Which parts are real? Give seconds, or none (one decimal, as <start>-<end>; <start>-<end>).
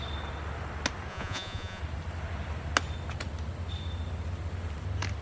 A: 0.0-1.1; 1.8-5.2